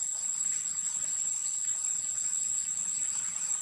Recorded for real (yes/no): yes